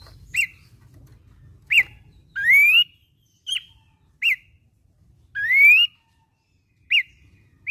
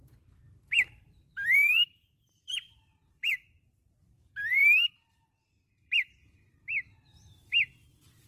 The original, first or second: first